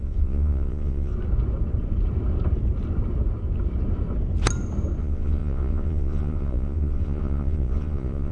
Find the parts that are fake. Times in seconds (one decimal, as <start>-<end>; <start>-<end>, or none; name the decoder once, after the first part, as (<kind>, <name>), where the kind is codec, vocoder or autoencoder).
0.0-1.1 (vocoder, Vocos); 5.0-8.3